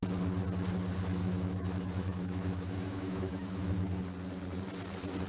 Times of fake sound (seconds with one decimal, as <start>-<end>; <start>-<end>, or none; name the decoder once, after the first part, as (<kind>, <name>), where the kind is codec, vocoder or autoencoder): 1.2-4.0 (autoencoder, DAC-VAE)